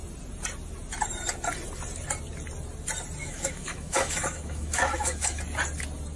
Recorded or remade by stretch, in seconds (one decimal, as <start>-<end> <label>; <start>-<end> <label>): 0.0-3.2 recorded; 3.2-5.4 remade; 5.4-6.2 recorded